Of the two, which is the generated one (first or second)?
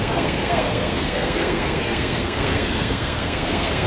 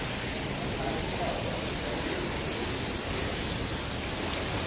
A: first